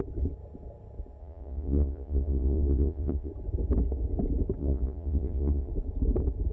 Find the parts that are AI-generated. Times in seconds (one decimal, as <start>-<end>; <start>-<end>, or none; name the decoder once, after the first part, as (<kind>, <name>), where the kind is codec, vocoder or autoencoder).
1.2-3.3 (vocoder, Vocos); 4.6-5.7